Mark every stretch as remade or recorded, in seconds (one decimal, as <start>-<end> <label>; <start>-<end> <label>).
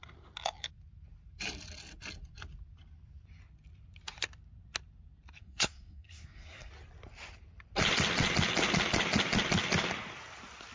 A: 0.0-5.4 recorded; 5.4-6.7 remade; 6.7-10.7 recorded